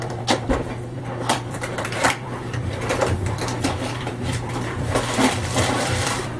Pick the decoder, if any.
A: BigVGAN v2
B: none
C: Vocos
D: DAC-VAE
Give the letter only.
A